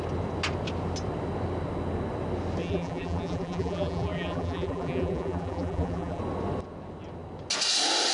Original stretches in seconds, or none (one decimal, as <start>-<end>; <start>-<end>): 0.0-2.6; 6.2-8.1